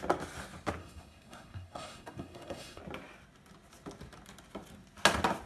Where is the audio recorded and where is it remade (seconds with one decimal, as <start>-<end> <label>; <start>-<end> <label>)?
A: 0.0-0.8 recorded; 0.8-2.8 remade; 2.8-5.5 recorded